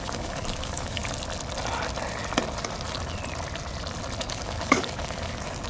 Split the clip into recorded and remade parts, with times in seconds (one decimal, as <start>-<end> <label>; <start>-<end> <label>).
0.0-1.0 remade; 1.0-4.2 recorded; 4.2-5.7 remade